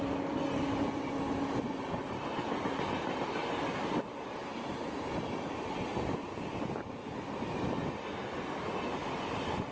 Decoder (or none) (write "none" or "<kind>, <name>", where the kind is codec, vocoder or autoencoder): none